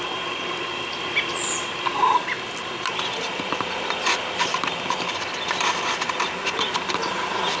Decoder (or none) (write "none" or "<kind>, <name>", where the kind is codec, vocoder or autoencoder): none